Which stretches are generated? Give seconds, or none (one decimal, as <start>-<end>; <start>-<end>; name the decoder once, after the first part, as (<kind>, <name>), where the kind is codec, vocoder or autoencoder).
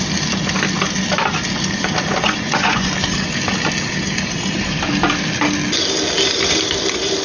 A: 2.2-2.9 (vocoder, Vocos)